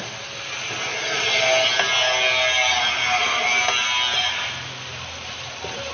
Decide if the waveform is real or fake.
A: real